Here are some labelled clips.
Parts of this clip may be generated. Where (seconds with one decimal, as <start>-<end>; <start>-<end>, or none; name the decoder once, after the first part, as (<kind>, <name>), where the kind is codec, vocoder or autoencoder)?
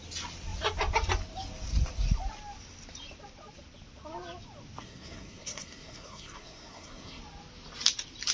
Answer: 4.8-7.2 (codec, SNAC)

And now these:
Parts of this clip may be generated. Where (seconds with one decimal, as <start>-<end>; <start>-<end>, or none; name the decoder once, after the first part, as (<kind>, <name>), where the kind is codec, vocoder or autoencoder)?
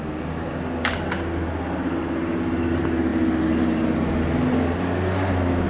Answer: none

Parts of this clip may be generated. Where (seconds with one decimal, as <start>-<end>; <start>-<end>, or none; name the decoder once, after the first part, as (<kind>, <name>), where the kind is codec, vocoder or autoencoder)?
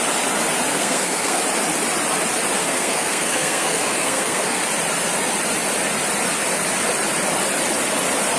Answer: 0.7-1.4 (codec, SNAC); 2.6-4.6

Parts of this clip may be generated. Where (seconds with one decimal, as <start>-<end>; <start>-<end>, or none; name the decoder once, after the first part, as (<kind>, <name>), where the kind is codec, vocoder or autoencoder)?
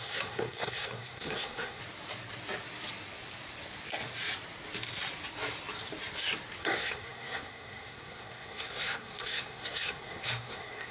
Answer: 0.0-1.8 (codec, SNAC); 6.6-10.9